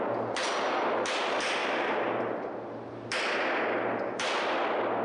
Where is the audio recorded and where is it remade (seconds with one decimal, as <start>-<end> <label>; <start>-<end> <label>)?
0.0-1.6 recorded; 1.6-2.2 remade; 2.2-5.0 recorded